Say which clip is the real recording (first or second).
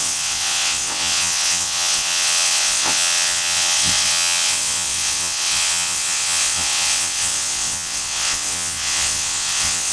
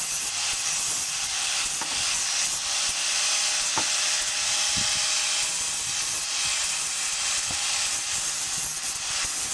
second